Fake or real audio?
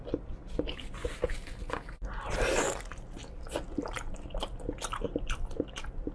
real